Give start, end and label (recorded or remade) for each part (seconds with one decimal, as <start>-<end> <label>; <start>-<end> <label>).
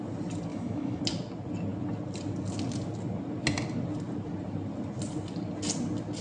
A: 0.0-0.5 recorded; 0.5-1.0 remade; 1.0-6.2 recorded